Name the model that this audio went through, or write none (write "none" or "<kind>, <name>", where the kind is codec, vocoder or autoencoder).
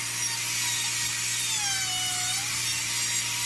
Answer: none